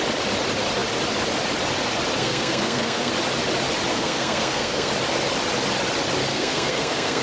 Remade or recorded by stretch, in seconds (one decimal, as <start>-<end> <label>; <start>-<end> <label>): 0.0-2.2 recorded; 2.2-3.1 remade; 3.1-3.9 recorded; 3.9-4.9 remade; 4.9-6.3 recorded; 6.3-7.2 remade

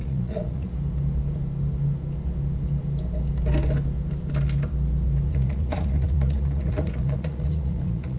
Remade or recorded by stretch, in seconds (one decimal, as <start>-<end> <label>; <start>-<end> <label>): 0.0-0.7 remade; 0.7-5.3 recorded; 5.3-8.2 remade

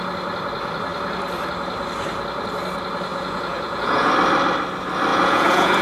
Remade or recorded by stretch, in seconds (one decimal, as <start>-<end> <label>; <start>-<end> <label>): 0.0-3.1 recorded; 3.1-4.1 remade; 4.1-5.1 recorded; 5.1-5.8 remade